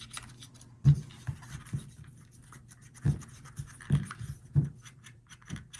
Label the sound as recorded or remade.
remade